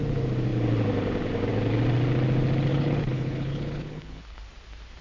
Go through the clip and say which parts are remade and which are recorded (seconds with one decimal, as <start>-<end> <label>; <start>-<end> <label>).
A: 0.0-2.7 recorded; 2.7-4.4 remade; 4.4-5.0 recorded